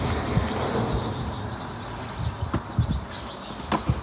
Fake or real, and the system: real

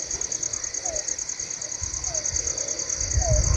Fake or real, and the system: real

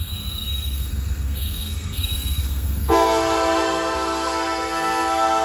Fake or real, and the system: fake, codec, SNAC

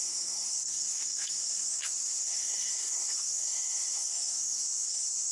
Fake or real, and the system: fake, codec, SNAC